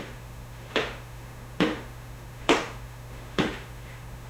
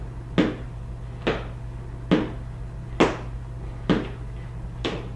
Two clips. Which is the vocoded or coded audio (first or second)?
first